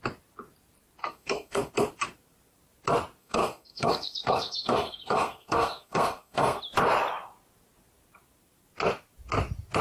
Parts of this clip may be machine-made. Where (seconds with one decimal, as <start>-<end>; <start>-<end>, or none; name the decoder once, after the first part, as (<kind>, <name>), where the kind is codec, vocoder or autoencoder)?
1.0-1.7 (codec, SNAC); 3.2-6.6